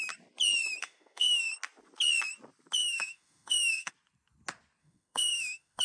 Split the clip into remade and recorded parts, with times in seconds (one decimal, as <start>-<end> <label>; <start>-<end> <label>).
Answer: 0.0-0.8 recorded; 0.8-1.5 remade; 1.5-2.8 recorded; 2.8-3.9 remade; 3.9-4.8 recorded; 4.8-5.8 remade